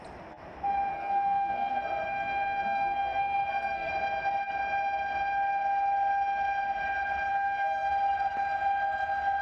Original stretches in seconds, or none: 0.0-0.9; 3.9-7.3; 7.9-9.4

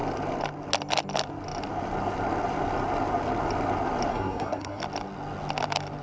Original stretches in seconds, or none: 0.0-4.1; 4.8-6.0